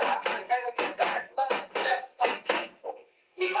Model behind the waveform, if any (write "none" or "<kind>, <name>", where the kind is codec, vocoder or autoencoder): codec, SNAC